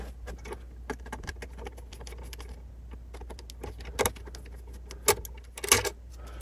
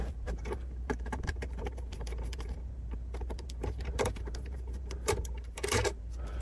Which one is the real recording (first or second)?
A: first